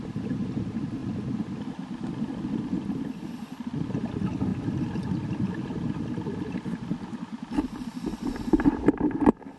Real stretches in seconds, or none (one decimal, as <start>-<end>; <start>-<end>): 0.0-9.6